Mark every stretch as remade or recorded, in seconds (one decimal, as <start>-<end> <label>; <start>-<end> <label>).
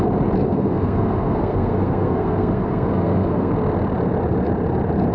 0.0-0.4 recorded; 0.4-3.5 remade; 3.5-5.1 recorded